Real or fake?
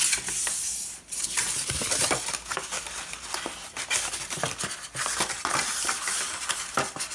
real